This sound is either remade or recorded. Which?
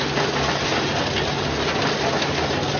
recorded